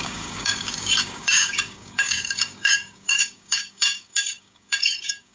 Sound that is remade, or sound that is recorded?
remade